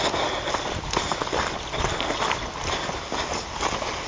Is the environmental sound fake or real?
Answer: real